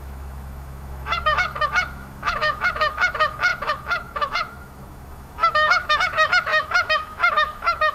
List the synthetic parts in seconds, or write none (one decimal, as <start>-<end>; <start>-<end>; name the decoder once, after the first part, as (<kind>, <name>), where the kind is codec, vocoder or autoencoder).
0.0-7.9 (autoencoder, DAC-VAE)